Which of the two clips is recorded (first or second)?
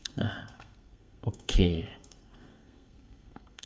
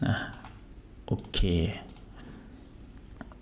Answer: second